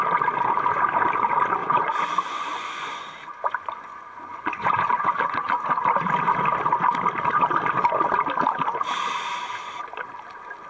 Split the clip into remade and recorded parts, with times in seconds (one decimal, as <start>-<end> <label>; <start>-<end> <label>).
0.0-1.6 recorded; 1.6-5.7 remade; 5.7-10.7 recorded